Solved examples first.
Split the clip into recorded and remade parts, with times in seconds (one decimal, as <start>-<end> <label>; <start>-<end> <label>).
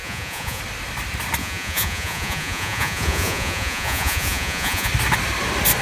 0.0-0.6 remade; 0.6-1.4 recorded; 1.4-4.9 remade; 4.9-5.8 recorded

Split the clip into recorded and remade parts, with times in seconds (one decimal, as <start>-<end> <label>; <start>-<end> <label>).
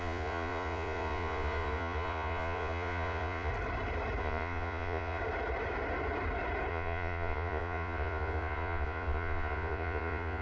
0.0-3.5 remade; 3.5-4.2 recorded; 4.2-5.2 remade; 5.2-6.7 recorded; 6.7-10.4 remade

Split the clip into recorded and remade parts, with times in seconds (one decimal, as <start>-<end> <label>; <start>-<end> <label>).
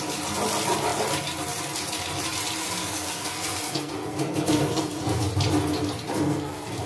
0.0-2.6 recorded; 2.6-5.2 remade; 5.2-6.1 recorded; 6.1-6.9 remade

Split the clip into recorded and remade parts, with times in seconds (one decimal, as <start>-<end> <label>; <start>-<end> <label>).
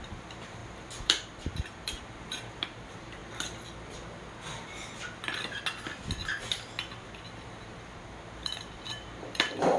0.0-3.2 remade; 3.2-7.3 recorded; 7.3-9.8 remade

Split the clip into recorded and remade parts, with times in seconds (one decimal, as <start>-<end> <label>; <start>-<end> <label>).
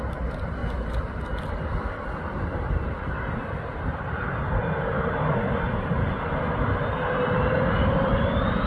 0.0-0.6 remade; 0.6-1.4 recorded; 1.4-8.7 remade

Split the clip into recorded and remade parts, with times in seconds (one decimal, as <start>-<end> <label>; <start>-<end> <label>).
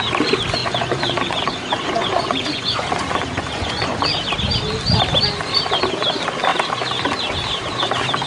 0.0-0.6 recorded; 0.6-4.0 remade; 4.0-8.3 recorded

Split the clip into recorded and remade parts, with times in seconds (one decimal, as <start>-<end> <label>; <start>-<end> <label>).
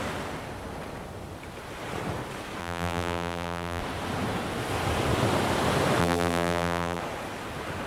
0.0-2.6 recorded; 2.6-3.8 remade; 3.8-6.0 recorded; 6.0-7.0 remade; 7.0-7.9 recorded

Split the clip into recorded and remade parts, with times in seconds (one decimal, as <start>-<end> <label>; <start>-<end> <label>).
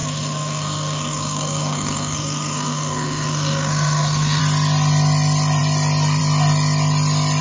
0.0-4.4 remade; 4.4-7.4 recorded